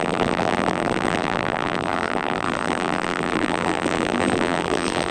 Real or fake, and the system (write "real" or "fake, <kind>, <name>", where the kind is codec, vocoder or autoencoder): fake, vocoder, BigVGAN v2